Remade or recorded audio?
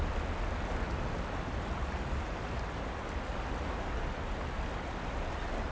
recorded